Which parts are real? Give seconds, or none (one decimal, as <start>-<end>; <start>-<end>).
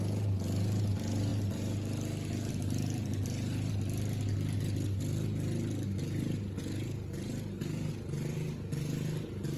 0.0-9.6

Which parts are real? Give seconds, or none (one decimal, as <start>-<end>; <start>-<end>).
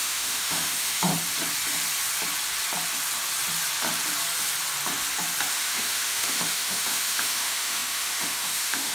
1.1-5.5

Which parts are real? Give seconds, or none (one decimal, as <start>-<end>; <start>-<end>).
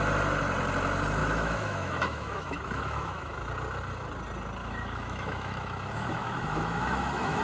0.0-1.2; 3.5-4.6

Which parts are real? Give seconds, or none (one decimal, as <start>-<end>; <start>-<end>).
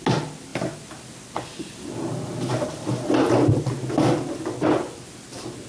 0.0-5.7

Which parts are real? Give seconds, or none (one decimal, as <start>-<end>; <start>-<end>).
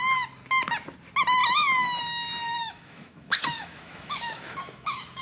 0.0-2.6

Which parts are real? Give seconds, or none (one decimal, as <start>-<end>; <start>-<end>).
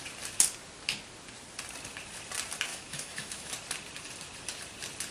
0.0-2.7; 3.5-5.1